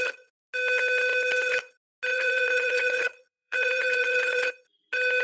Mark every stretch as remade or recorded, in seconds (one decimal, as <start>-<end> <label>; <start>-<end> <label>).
0.0-2.1 recorded; 2.1-4.5 remade; 4.5-5.2 recorded